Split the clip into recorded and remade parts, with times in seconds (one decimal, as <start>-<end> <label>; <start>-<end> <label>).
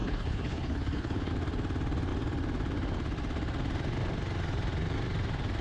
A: 0.0-1.3 remade; 1.3-5.6 recorded